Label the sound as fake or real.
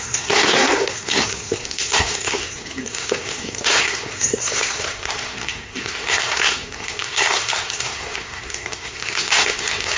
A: fake